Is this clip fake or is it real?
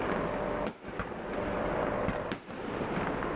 real